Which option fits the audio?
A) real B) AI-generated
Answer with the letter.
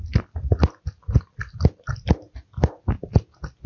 A